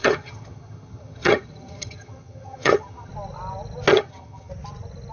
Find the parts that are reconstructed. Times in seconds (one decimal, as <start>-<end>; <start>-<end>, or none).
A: 0.0-3.1; 3.9-4.5